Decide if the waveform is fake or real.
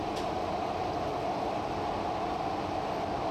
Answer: real